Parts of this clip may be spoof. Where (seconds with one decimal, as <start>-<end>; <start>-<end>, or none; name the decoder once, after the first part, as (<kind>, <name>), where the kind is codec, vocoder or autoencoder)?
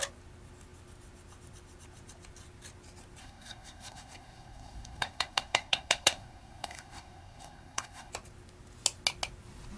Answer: 3.2-8.1 (codec, SNAC)